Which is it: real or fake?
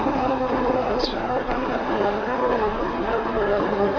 fake